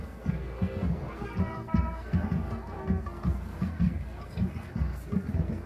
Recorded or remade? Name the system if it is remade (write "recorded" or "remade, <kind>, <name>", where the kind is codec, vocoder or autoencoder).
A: remade, codec, SNAC